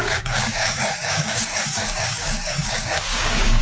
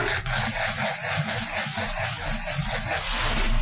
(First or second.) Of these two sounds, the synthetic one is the first